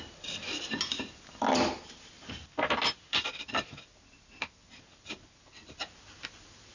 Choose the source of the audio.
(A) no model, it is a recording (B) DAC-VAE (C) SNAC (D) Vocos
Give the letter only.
A